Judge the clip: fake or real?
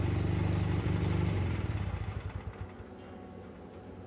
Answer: real